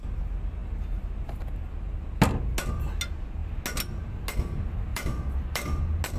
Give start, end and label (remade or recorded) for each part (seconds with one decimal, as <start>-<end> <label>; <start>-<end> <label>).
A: 0.0-4.9 recorded; 4.9-5.8 remade; 5.8-6.2 recorded